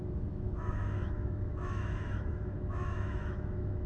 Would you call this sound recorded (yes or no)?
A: no